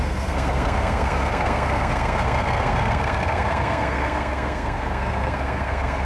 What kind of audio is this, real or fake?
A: fake